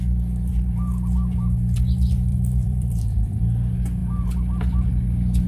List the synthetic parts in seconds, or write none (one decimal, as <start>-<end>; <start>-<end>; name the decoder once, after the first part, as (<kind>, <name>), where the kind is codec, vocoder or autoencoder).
2.3-3.4 (vocoder, BigVGAN v2)